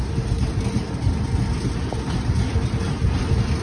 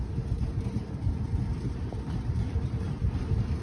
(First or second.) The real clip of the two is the first